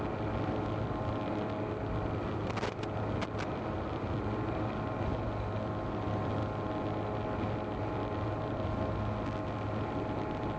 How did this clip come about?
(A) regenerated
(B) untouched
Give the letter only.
B